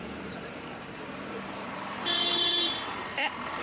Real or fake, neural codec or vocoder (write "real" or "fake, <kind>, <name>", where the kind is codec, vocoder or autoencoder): fake, vocoder, BigVGAN v2